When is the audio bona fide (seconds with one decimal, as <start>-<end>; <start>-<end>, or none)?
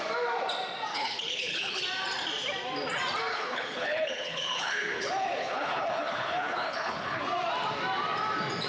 0.0-0.9; 1.8-3.3; 7.2-8.7